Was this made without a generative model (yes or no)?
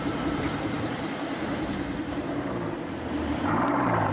no